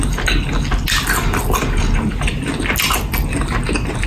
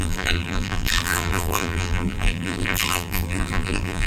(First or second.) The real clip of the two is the first